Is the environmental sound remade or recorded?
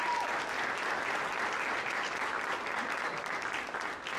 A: recorded